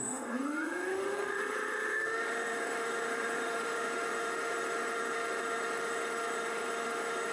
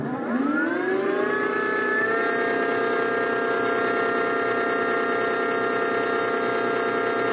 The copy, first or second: first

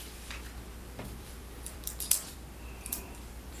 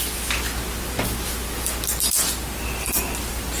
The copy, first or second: first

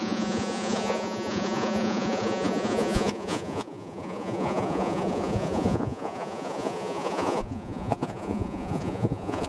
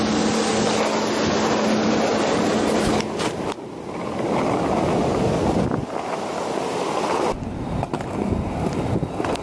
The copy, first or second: first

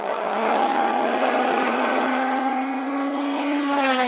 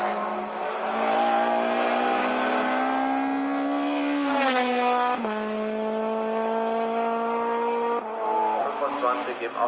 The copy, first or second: first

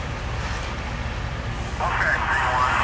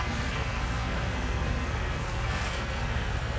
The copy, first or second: second